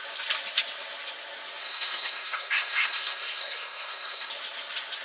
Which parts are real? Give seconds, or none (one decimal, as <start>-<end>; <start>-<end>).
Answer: 0.0-1.6; 4.3-5.0